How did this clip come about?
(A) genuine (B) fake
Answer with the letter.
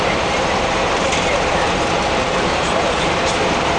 B